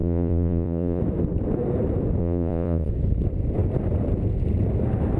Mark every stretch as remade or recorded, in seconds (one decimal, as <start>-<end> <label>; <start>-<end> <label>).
0.0-1.0 remade; 1.0-2.2 recorded; 2.2-2.9 remade; 2.9-5.2 recorded